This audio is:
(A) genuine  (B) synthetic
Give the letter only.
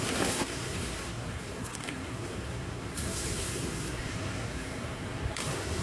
B